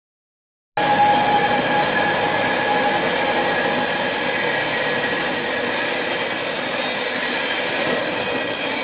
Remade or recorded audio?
recorded